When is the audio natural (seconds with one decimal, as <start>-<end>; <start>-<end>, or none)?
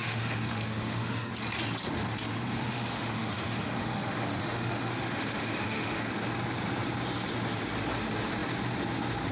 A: 1.3-2.6; 6.1-9.3